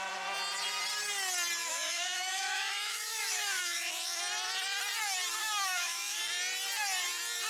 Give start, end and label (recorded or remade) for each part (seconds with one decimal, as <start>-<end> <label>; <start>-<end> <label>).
0.0-1.6 recorded; 1.6-4.2 remade; 4.2-5.4 recorded; 5.4-6.2 remade; 6.2-7.5 recorded